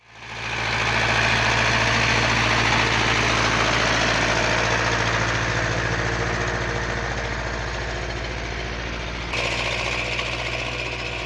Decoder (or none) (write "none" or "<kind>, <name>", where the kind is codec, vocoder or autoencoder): none